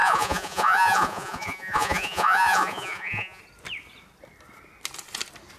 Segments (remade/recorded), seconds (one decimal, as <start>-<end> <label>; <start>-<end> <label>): 0.0-3.4 remade; 3.4-5.6 recorded